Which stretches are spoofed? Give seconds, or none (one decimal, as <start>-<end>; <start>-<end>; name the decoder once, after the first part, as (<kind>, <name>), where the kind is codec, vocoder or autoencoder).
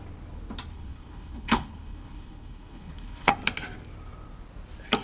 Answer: 0.7-3.3 (codec, HILCodec)